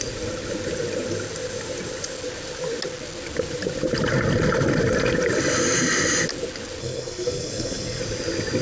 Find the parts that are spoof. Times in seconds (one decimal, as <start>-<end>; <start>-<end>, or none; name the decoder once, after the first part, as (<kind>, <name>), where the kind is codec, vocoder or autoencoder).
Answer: 6.8-8.0 (codec, SNAC)

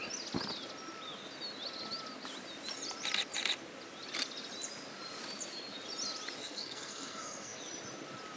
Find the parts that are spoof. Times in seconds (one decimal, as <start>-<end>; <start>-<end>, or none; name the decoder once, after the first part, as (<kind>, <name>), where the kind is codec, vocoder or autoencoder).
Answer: 6.4-7.6 (codec, SNAC)

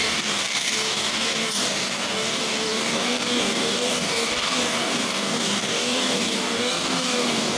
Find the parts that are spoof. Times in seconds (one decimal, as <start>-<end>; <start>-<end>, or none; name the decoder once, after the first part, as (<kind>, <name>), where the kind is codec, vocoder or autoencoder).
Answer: 0.0-7.6 (codec, DAC)

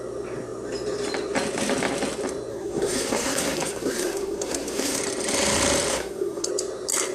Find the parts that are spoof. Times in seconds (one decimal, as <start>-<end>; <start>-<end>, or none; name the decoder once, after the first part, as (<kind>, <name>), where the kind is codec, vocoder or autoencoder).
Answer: 2.5-5.0 (codec, SNAC); 5.9-6.5